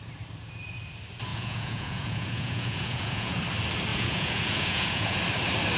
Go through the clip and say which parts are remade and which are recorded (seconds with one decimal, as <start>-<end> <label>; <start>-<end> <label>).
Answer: 0.0-1.3 recorded; 1.3-3.4 remade; 3.4-3.9 recorded; 3.9-5.2 remade; 5.2-5.8 recorded